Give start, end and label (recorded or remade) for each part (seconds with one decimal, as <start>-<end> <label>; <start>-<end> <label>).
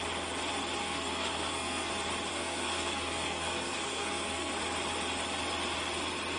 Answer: 0.0-0.8 recorded; 0.8-1.9 remade; 1.9-2.3 recorded; 2.3-4.5 remade; 4.5-6.4 recorded